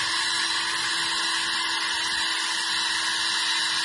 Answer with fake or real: real